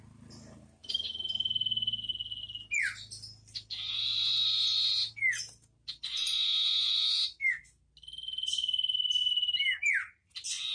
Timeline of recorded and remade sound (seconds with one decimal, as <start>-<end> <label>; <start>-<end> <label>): 0.0-10.7 recorded